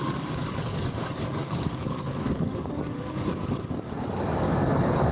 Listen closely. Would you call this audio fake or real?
fake